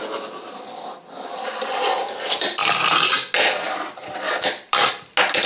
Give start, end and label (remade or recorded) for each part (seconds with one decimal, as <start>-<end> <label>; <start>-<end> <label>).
0.0-5.5 recorded